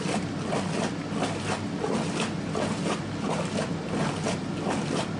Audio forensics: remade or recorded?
recorded